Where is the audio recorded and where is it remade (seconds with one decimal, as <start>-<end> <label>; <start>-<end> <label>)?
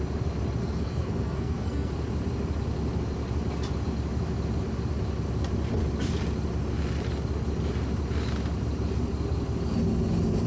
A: 0.0-0.6 recorded; 0.6-1.9 remade; 1.9-10.5 recorded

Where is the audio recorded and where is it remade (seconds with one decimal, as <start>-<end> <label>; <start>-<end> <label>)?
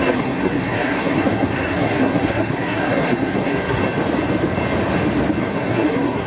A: 0.0-3.8 remade; 3.8-5.4 recorded; 5.4-6.3 remade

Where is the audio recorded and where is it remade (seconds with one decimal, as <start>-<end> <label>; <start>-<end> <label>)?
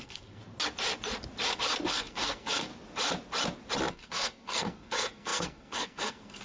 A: 0.0-0.4 remade; 0.4-1.9 recorded; 1.9-2.7 remade; 2.7-3.9 recorded; 3.9-6.4 remade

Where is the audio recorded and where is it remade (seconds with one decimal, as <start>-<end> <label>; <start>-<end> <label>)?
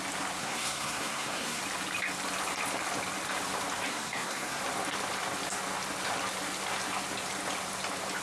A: 0.0-0.4 recorded; 0.4-1.6 remade; 1.6-3.9 recorded; 3.9-4.6 remade; 4.6-8.2 recorded